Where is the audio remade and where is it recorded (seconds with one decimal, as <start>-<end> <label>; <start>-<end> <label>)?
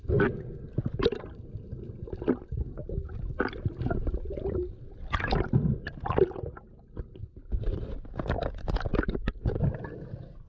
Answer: 0.0-2.8 recorded; 2.8-6.4 remade; 6.4-7.2 recorded; 7.2-8.4 remade; 8.4-8.9 recorded; 8.9-9.9 remade; 9.9-10.5 recorded